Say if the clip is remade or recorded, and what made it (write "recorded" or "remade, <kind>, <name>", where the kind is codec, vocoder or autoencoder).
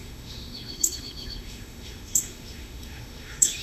remade, autoencoder, DAC-VAE